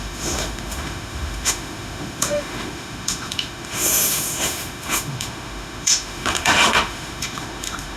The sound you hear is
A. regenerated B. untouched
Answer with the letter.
A